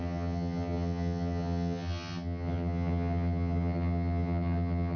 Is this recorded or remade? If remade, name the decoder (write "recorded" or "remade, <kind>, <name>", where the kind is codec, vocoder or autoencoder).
remade, vocoder, HiFi-GAN